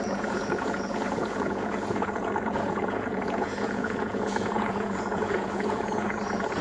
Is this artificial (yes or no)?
yes